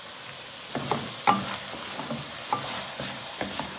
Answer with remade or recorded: recorded